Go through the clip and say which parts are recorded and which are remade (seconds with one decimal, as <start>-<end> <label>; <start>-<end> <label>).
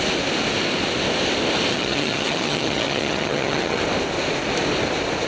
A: 0.0-1.7 recorded; 1.7-3.8 remade; 3.8-5.3 recorded